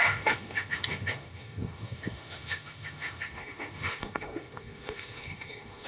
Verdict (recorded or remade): remade